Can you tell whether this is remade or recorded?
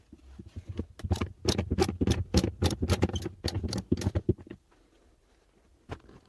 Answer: recorded